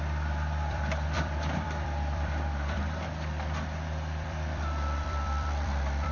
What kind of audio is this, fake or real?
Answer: fake